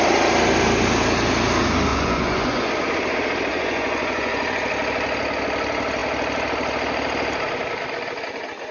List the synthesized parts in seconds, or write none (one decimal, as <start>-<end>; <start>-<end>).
1.9-2.7; 3.5-4.6